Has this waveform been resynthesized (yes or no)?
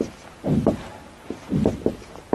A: yes